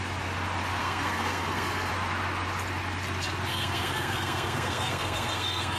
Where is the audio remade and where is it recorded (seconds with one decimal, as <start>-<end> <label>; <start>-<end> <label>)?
0.0-0.8 recorded; 0.8-1.9 remade; 1.9-3.5 recorded; 3.5-5.8 remade